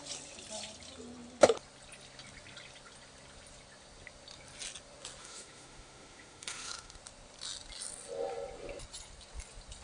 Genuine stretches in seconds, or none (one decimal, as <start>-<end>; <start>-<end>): 0.0-5.2; 7.0-9.8